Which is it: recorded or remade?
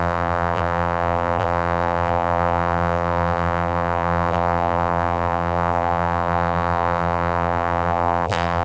remade